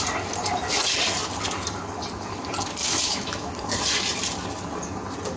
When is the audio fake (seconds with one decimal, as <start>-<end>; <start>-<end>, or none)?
2.8-3.5